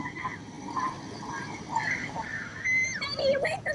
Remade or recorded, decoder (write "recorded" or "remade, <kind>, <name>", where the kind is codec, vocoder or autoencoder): recorded